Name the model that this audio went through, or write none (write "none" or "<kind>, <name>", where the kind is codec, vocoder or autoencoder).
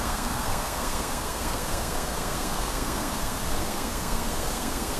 codec, SNAC